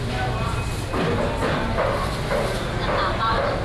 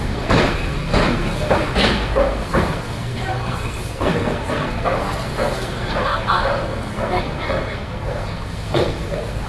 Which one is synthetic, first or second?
second